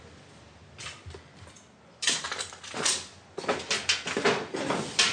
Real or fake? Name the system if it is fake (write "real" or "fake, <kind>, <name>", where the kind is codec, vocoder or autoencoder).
real